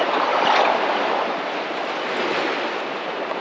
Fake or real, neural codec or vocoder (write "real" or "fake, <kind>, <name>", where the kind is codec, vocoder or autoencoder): real